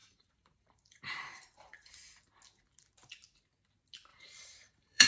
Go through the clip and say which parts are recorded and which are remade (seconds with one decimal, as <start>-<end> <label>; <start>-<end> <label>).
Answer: 0.0-1.9 remade; 1.9-4.1 recorded; 4.1-5.1 remade